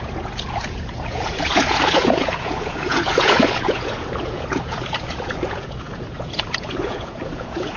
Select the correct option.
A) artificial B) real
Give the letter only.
A